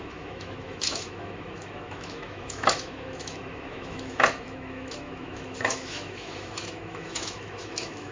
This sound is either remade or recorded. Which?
remade